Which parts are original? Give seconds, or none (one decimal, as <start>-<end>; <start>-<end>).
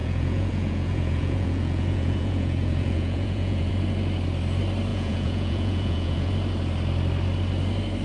3.7-4.9; 6.3-8.0